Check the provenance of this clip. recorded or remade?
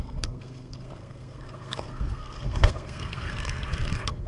remade